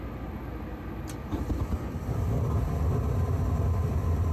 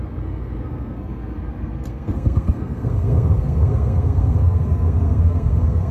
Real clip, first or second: first